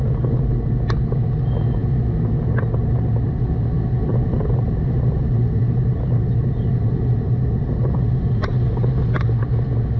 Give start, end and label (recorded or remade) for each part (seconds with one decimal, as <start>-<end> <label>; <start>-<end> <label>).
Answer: 0.0-4.1 recorded; 4.1-8.9 remade; 8.9-10.0 recorded